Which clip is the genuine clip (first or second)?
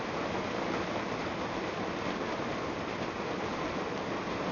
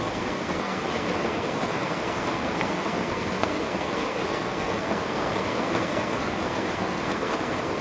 first